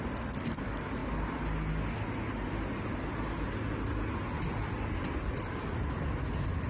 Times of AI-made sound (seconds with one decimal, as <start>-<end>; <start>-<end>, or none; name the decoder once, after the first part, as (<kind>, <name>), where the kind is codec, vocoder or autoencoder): none